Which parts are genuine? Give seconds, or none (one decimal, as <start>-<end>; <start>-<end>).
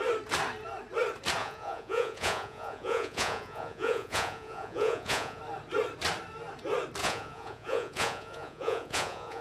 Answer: 0.0-1.4; 5.4-7.0